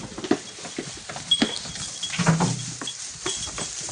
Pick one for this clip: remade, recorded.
recorded